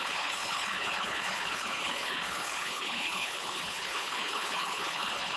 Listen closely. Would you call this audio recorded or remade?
remade